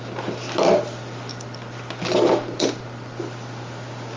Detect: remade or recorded recorded